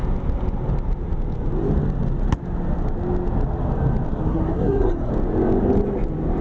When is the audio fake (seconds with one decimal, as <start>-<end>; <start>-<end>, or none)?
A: 4.3-5.1